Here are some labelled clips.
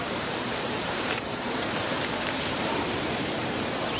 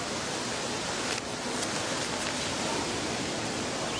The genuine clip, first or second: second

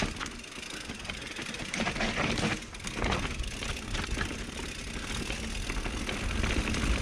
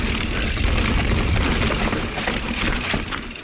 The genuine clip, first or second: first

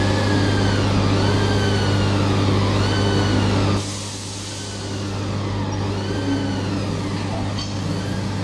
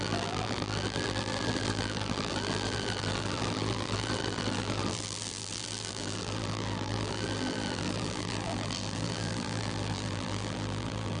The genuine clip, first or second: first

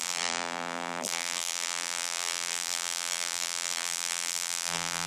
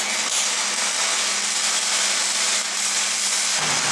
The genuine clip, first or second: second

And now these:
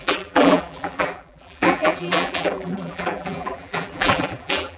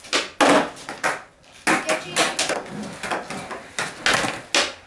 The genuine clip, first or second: second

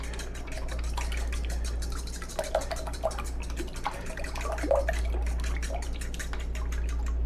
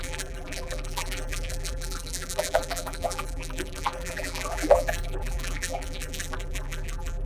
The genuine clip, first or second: first